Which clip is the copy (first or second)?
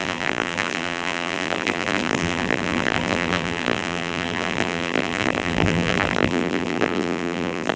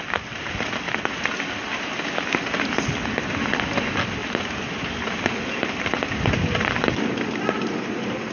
first